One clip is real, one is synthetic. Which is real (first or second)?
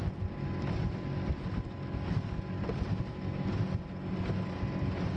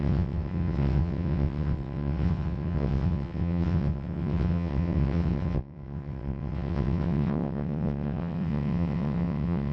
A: first